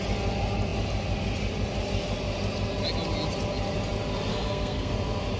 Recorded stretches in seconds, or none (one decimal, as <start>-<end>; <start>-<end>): 0.0-4.3; 4.9-5.4